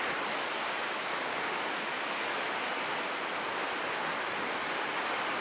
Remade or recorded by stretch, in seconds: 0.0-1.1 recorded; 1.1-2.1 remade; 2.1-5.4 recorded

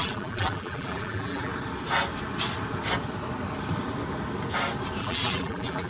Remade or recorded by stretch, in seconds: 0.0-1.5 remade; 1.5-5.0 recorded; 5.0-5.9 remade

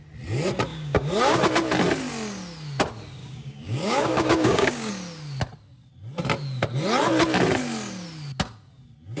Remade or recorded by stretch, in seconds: 0.0-0.7 recorded; 0.7-1.4 remade; 1.4-3.2 recorded; 3.2-4.9 remade; 4.9-9.2 recorded

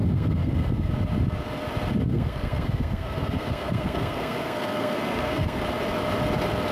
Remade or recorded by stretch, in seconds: 0.0-0.9 remade; 0.9-2.1 recorded; 2.1-5.6 remade; 5.6-6.7 recorded